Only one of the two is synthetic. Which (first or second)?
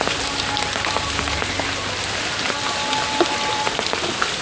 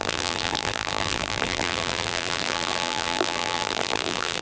second